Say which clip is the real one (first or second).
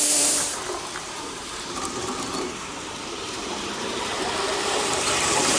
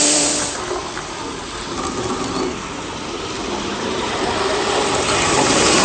second